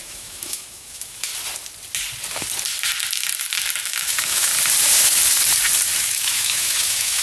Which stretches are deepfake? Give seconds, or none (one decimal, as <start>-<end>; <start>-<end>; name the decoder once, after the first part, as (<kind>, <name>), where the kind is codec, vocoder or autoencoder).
0.0-1.3 (autoencoder, DAC-VAE); 3.8-4.5; 6.0-7.2